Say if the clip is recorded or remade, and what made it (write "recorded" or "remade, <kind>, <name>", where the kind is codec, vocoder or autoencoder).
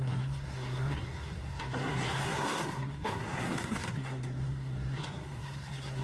remade, codec, SNAC